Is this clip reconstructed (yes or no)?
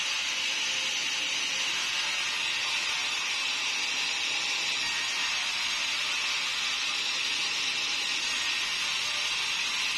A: no